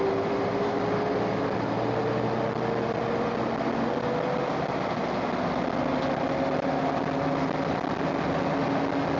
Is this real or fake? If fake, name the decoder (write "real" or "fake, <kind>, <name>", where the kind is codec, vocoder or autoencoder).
real